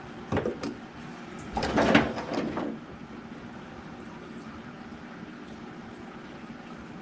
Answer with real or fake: real